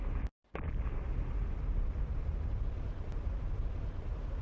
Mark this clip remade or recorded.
recorded